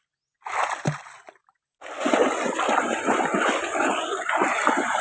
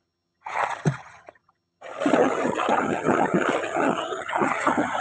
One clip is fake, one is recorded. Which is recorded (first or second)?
first